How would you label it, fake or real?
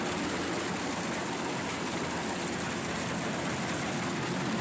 real